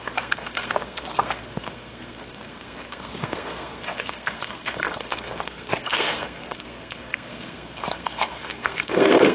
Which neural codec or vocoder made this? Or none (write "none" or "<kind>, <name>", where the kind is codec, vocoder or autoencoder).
codec, SNAC